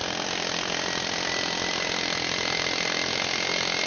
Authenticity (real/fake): real